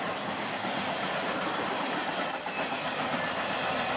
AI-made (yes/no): no